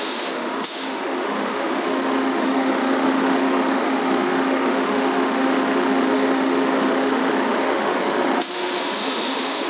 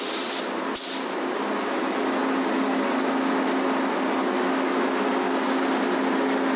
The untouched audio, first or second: second